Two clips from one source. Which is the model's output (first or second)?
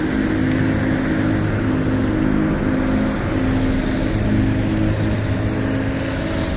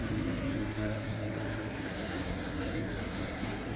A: second